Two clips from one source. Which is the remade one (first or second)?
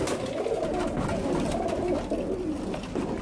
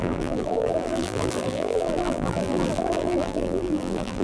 second